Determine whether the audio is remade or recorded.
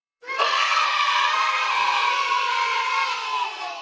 remade